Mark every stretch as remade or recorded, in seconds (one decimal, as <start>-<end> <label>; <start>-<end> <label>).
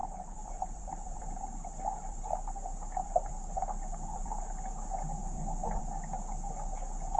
0.0-4.3 remade; 4.3-5.2 recorded; 5.2-5.8 remade; 5.8-7.2 recorded